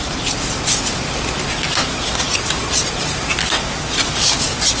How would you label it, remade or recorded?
recorded